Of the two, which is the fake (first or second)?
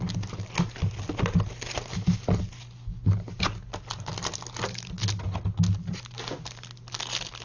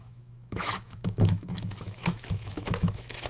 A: second